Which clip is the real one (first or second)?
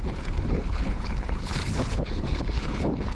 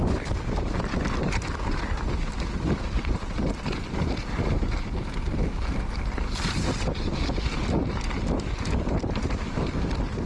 second